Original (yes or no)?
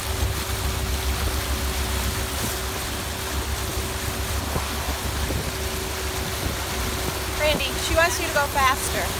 yes